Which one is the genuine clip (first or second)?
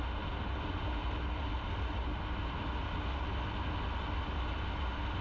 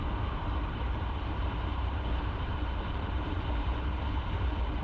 first